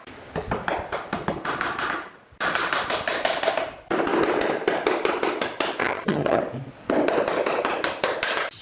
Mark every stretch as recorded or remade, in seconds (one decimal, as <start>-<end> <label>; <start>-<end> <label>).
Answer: 0.0-5.8 recorded; 5.8-6.4 remade; 6.4-8.6 recorded